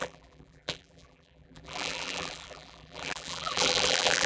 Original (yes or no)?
no